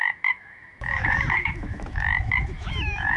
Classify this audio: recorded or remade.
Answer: remade